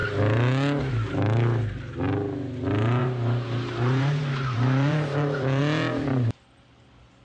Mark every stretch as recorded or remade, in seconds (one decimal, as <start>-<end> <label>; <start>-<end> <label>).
0.0-3.0 recorded; 3.0-5.6 remade; 5.6-7.2 recorded